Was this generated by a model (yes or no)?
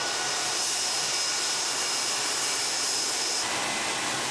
no